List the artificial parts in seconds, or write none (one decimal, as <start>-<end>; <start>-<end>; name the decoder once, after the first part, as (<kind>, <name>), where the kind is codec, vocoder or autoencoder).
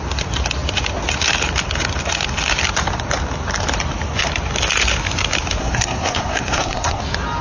5.6-7.0 (codec, SNAC)